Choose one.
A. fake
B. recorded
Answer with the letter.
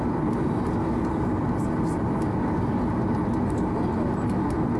B